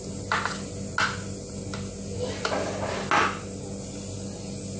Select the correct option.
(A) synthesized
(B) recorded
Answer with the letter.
B